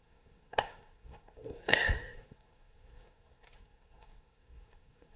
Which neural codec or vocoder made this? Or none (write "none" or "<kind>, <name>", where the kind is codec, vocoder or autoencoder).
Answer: codec, SNAC